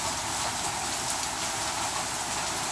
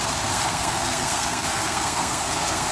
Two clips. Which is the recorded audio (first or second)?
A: first